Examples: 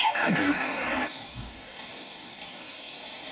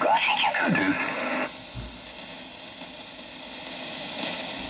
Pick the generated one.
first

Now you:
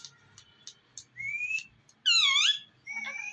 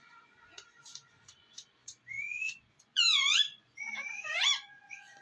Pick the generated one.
second